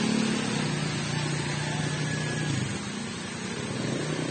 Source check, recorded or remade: recorded